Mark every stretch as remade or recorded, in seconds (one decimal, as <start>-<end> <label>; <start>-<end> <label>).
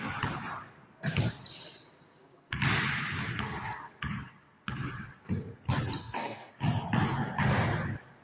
0.0-6.0 recorded; 6.0-6.5 remade; 6.5-8.2 recorded